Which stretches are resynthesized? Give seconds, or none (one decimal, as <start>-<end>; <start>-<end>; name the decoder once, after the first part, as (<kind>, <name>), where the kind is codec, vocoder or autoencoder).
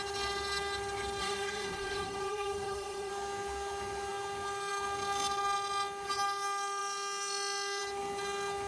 1.2-3.1 (codec, SNAC)